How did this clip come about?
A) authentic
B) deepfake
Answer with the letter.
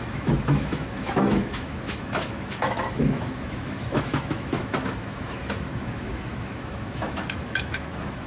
B